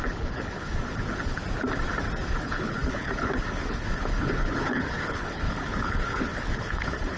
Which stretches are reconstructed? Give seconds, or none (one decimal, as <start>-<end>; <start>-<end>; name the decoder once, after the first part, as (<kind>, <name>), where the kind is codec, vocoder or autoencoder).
0.0-1.4 (codec, HILCodec); 2.3-7.2